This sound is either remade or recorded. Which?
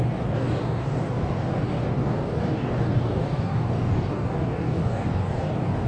remade